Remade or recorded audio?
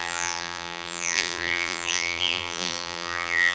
remade